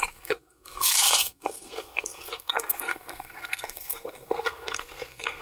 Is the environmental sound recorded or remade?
remade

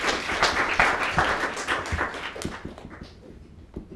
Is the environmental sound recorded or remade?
recorded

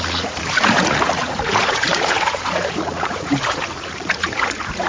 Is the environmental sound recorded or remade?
remade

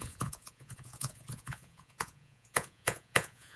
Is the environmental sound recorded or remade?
remade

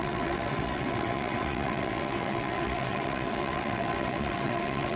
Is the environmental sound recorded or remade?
remade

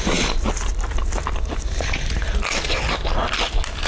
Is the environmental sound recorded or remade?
recorded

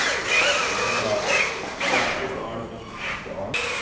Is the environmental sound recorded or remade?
recorded